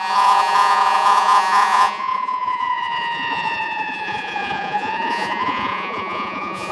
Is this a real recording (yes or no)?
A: no